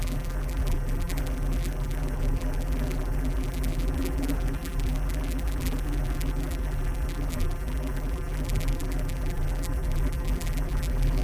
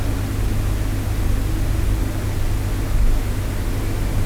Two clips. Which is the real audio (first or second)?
second